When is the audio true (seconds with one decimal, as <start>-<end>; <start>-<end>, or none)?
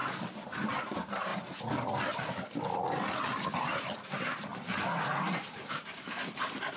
0.0-0.7; 1.3-3.6; 4.5-5.2